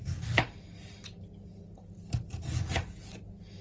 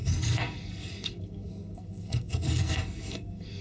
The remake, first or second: second